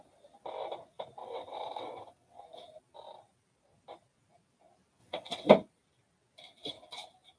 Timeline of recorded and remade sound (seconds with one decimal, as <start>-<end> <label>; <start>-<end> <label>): 0.0-1.2 recorded; 1.2-2.4 remade; 2.4-5.0 recorded; 5.0-5.5 remade; 5.5-7.4 recorded